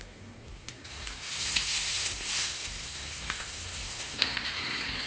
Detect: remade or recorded remade